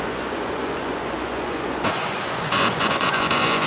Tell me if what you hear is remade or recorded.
remade